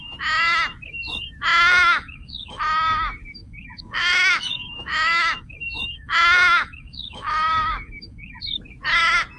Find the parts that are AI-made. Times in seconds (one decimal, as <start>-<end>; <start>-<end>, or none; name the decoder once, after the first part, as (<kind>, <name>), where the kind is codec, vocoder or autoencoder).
1.5-2.6 (autoencoder, DAC-VAE); 3.4-8.4